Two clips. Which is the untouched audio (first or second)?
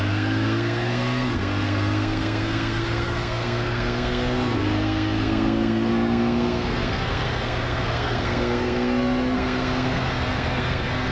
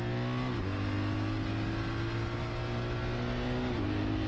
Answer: second